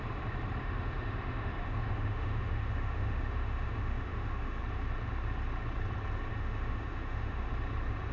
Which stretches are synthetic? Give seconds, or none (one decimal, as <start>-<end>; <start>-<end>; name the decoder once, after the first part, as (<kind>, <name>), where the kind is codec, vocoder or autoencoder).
0.6-4.6 (autoencoder, DAC-VAE); 6.3-7.5